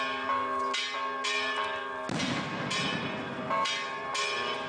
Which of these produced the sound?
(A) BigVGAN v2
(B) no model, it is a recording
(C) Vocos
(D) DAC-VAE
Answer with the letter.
B